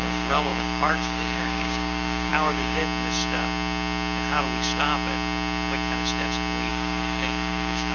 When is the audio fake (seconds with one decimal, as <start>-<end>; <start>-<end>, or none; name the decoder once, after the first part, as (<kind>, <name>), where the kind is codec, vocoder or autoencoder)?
0.0-2.8 (codec, DAC); 6.7-7.9